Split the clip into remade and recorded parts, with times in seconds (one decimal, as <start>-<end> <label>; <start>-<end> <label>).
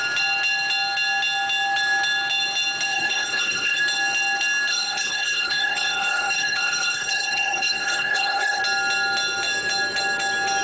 0.0-2.9 recorded; 2.9-3.8 remade; 3.8-4.7 recorded; 4.7-8.6 remade; 8.6-10.6 recorded